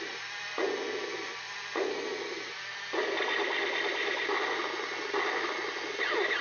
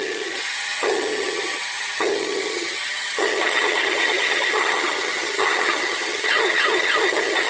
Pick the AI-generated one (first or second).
second